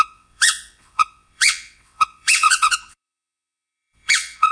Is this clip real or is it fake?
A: fake